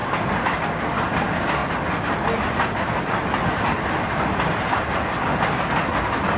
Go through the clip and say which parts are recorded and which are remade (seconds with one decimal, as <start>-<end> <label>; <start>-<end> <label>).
0.0-0.6 remade; 0.6-6.4 recorded

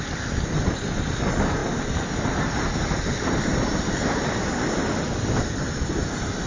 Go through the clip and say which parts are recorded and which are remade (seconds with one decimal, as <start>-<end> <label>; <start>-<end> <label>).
0.0-6.5 recorded

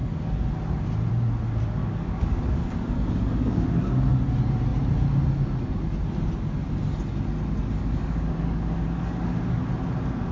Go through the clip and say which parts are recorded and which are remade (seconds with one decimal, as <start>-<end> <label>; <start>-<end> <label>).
0.0-1.8 recorded; 1.8-4.1 remade; 4.1-7.8 recorded; 7.8-9.6 remade; 9.6-10.3 recorded

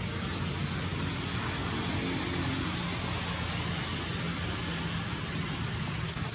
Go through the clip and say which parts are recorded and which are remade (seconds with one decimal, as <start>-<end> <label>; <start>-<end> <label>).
0.0-6.3 recorded